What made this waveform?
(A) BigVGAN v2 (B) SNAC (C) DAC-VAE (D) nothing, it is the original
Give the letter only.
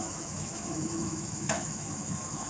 C